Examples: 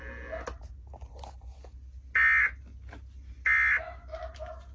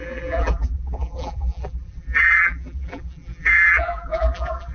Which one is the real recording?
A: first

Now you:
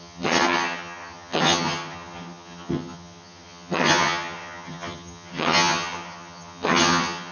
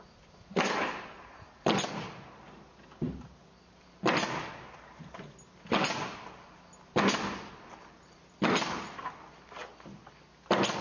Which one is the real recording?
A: second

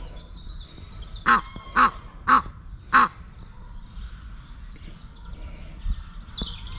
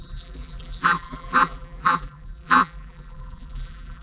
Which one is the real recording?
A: first